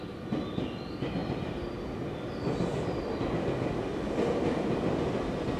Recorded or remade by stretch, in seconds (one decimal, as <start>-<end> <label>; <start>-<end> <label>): 0.0-5.6 recorded